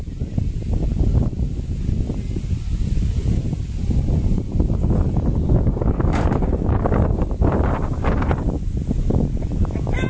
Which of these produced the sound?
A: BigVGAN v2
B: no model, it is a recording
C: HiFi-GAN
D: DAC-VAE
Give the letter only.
B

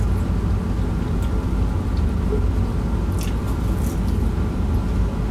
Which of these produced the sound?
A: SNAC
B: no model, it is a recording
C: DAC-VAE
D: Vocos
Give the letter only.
B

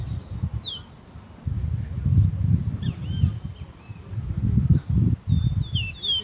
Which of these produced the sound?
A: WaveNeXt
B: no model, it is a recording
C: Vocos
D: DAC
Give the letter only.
B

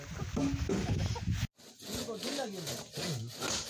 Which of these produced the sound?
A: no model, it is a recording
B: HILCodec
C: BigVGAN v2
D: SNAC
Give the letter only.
A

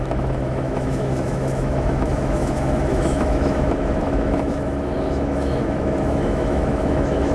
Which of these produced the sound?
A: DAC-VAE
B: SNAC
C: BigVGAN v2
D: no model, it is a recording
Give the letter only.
A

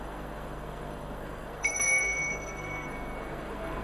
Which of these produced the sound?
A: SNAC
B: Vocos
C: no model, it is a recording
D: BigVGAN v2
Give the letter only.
A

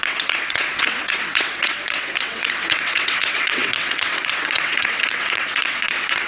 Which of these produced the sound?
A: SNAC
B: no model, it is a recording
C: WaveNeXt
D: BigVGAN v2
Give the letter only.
C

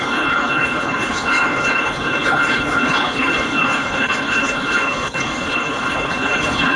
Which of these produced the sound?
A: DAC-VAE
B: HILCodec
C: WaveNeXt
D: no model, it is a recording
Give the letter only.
B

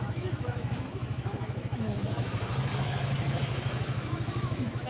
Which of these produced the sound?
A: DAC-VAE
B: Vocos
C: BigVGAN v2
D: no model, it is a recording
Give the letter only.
A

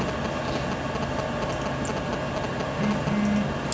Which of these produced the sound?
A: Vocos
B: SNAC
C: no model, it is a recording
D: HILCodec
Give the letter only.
C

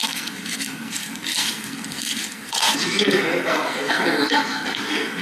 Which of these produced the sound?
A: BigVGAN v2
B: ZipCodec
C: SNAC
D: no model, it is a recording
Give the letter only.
C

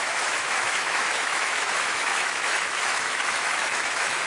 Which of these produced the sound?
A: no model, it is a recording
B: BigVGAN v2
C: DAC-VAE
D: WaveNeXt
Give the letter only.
C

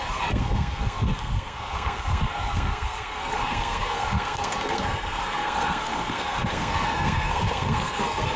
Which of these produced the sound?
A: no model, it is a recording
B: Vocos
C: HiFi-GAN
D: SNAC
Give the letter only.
D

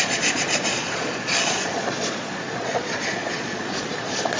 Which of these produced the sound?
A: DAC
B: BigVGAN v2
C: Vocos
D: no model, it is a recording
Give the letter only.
C